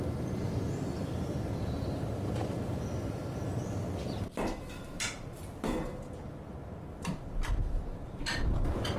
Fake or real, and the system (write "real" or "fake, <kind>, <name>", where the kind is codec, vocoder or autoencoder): fake, vocoder, BigVGAN v2